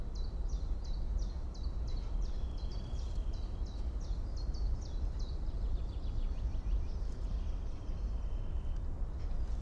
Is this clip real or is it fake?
real